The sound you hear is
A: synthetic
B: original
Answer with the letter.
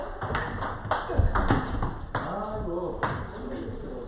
B